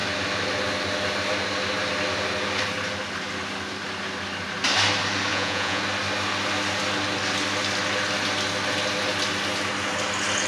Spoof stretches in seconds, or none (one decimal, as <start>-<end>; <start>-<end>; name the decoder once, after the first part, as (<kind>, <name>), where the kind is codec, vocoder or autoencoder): 5.3-5.8 (vocoder, Vocos)